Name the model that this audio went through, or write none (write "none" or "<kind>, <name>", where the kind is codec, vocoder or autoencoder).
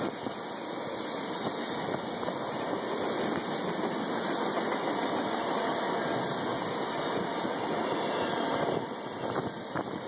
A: none